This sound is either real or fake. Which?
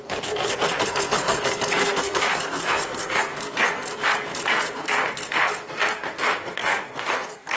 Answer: fake